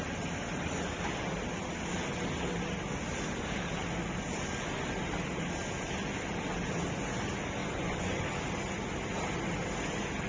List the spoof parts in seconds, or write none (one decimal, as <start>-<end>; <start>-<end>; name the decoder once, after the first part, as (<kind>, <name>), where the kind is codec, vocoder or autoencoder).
7.6-8.2 (vocoder, Vocos)

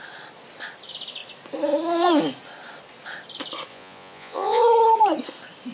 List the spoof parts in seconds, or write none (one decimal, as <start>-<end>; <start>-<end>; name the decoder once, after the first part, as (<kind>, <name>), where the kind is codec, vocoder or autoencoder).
3.7-4.6 (vocoder, Vocos)